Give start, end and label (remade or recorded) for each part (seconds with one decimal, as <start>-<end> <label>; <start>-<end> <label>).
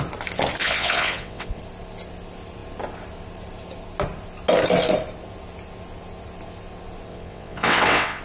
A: 0.0-0.6 recorded; 0.6-1.6 remade; 1.6-7.1 recorded; 7.1-8.2 remade